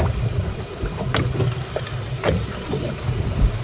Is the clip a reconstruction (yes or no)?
no